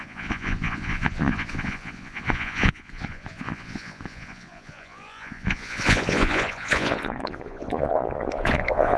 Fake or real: fake